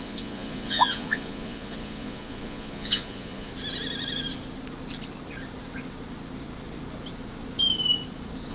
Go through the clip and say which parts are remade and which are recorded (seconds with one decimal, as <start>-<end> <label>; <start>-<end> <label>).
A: 0.0-3.5 remade; 3.5-8.5 recorded